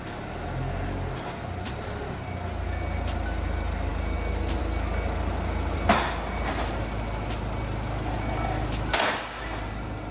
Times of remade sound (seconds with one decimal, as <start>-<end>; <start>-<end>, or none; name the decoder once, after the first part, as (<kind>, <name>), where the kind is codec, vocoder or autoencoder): none